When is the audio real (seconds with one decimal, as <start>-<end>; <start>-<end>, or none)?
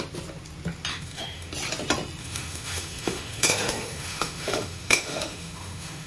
0.0-0.9; 1.5-2.2